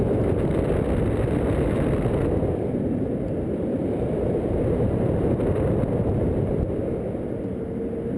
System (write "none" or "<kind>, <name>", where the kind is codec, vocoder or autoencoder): none